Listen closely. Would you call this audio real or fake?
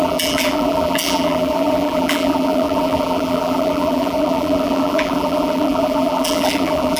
fake